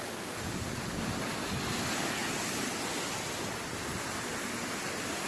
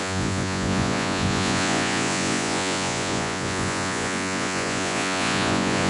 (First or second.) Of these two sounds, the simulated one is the second